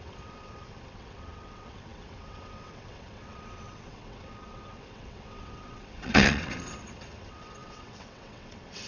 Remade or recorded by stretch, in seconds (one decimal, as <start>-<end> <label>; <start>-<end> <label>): 0.0-8.9 remade